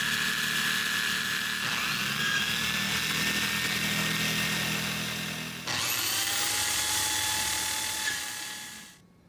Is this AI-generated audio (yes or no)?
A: no